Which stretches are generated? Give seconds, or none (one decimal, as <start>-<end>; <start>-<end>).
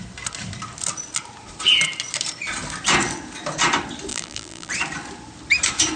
4.1-4.7